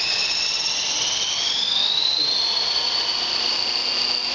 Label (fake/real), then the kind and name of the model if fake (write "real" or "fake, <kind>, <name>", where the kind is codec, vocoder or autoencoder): real